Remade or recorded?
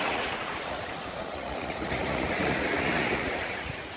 remade